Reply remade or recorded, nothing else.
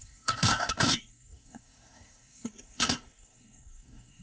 remade